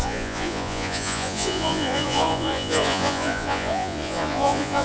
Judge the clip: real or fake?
fake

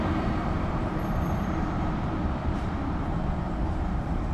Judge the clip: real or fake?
fake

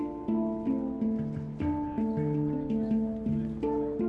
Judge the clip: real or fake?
real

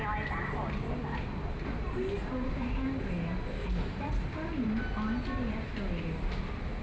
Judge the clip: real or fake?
real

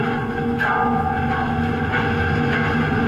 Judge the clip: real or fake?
real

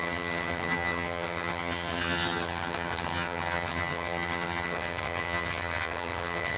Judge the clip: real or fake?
fake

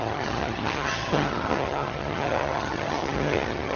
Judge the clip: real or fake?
fake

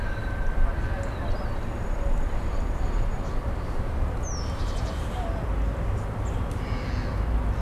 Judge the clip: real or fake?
real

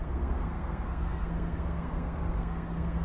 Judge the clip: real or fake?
fake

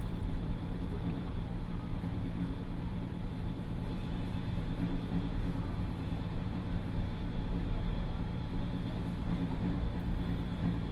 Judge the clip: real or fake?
fake